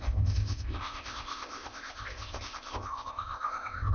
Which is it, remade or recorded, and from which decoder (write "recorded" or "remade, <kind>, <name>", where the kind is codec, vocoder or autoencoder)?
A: remade, codec, ZipCodec